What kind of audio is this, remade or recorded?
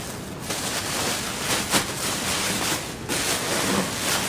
recorded